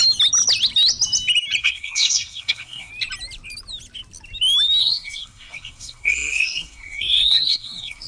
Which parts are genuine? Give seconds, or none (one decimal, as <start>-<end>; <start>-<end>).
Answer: 0.0-1.6; 2.9-4.8